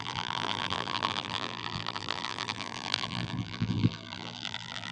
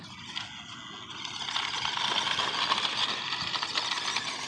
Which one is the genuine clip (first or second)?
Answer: second